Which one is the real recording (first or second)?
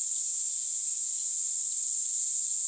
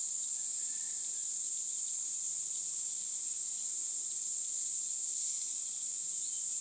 first